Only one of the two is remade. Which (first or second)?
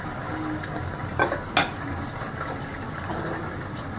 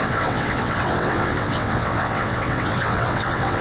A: second